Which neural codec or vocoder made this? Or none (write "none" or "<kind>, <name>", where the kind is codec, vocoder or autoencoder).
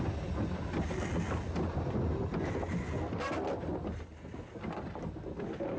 none